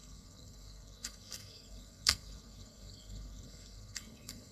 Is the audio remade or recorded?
remade